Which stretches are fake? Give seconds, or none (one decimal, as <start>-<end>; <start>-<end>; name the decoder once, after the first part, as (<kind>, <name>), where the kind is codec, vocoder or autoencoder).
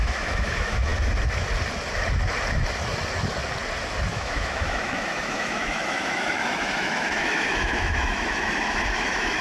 0.0-0.9 (autoencoder, DAC-VAE); 4.1-9.4